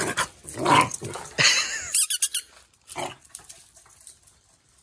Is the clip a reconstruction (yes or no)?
no